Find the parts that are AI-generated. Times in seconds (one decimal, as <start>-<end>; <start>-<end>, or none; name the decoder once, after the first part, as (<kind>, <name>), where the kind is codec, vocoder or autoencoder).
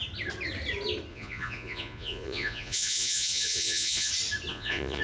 1.1-4.1 (vocoder, Vocos); 4.5-5.0